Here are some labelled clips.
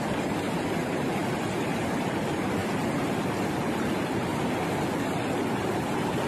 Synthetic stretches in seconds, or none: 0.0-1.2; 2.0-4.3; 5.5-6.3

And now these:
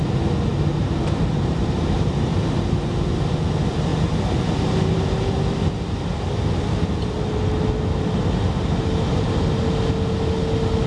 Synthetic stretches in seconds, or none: 0.5-3.3

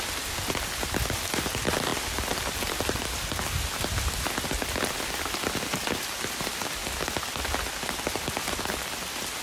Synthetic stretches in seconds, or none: 0.0-6.8; 8.1-9.4

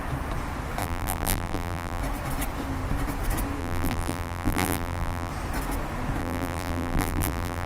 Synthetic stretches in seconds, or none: 0.8-2.0; 3.6-5.3; 6.2-7.7

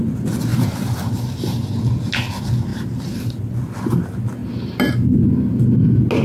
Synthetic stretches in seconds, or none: 0.5-1.8; 2.7-3.4; 4.4-5.3

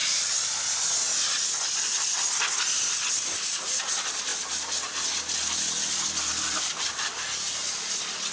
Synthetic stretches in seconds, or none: 3.9-8.3

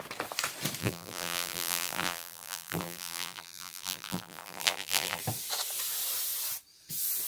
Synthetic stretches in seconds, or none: 0.8-5.2